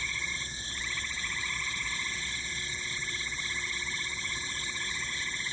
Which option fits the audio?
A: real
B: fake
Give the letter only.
B